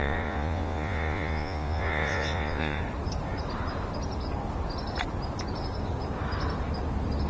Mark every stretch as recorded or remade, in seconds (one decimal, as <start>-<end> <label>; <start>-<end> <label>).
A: 0.0-2.8 remade; 2.8-7.3 recorded